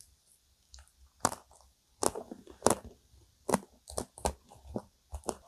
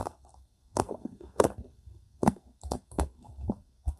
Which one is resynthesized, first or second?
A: second